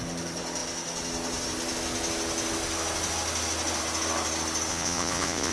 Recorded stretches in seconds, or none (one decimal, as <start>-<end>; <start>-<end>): 0.0-4.7